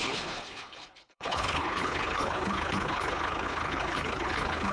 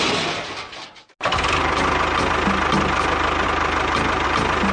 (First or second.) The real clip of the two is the second